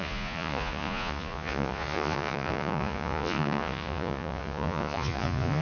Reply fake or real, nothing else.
fake